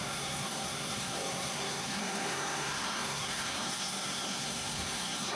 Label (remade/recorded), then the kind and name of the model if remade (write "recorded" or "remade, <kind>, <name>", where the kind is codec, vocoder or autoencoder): remade, codec, SNAC